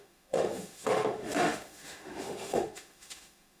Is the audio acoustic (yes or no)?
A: no